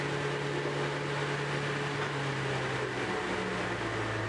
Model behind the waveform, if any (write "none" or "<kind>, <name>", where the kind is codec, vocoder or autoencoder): none